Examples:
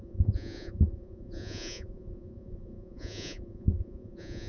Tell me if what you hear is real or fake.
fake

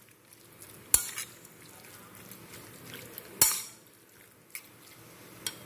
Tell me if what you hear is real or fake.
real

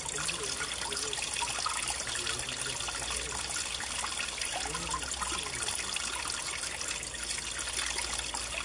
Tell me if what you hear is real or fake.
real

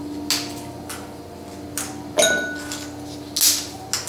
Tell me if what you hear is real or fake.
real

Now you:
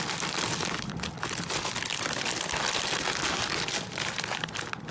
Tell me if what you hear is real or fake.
real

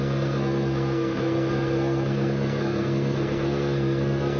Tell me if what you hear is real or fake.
fake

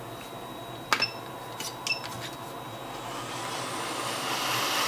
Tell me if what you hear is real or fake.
real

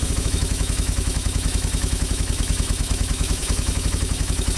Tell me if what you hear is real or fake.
fake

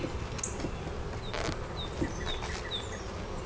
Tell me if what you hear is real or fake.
real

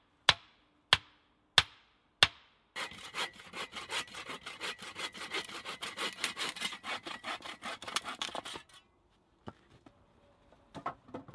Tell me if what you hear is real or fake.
real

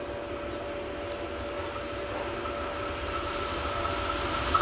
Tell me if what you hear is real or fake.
real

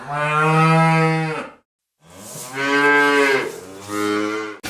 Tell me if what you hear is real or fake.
real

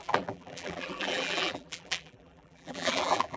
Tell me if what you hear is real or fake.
fake